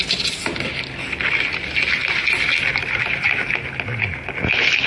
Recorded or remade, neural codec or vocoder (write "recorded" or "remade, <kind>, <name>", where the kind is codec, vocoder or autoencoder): recorded